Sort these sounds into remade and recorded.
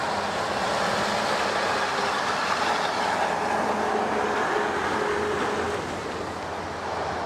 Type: recorded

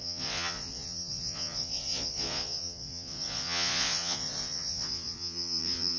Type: remade